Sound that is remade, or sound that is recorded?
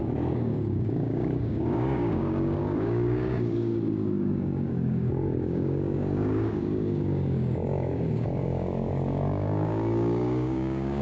remade